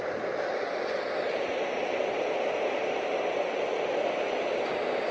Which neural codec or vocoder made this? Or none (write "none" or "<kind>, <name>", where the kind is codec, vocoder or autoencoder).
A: none